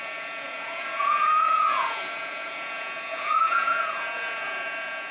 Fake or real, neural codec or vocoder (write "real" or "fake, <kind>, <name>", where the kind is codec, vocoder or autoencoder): fake, vocoder, Vocos